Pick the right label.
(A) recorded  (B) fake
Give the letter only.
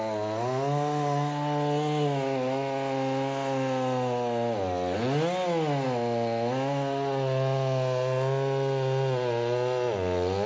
A